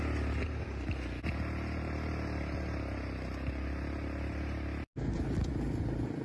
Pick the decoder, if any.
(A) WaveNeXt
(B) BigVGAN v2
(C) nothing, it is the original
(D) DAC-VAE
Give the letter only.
C